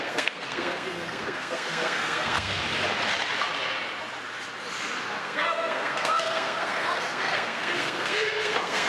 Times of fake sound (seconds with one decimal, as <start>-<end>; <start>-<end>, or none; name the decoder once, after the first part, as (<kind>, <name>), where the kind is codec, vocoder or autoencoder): 0.0-2.6 (codec, SNAC); 5.2-8.9